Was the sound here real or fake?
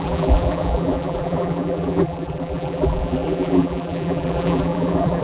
fake